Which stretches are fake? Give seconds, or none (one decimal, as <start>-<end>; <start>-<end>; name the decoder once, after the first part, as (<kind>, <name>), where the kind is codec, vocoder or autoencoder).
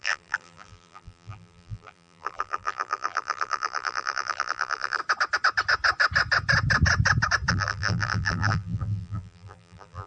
0.0-5.0 (vocoder, BigVGAN v2); 7.5-10.1